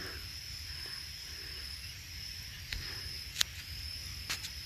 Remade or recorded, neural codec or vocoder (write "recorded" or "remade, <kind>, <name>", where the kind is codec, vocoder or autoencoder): recorded